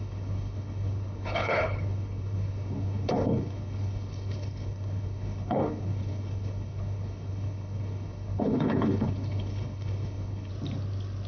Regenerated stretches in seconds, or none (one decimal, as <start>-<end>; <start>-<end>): 0.0-10.5